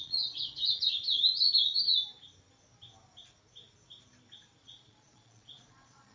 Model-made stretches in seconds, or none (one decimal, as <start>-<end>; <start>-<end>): 0.0-0.9; 4.6-6.1